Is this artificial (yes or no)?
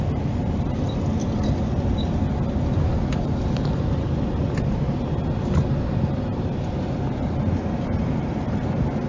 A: no